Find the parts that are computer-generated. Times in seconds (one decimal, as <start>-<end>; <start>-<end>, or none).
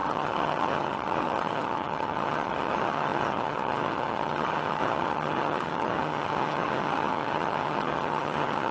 0.0-8.7